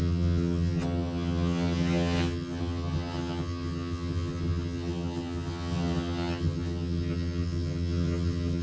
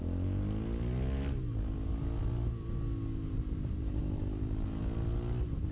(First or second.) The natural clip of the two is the second